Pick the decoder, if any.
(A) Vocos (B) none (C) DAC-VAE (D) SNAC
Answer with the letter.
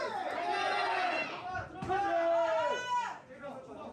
B